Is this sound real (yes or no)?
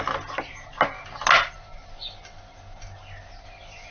yes